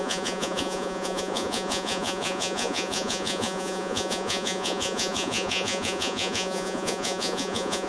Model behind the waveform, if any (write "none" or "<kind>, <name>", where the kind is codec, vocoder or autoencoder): vocoder, Vocos